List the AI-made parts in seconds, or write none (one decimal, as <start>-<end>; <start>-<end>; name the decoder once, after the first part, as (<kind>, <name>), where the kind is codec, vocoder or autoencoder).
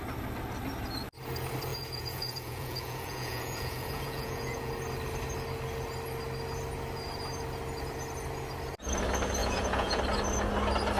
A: 1.7-4.7 (vocoder, Vocos); 9.4-10.0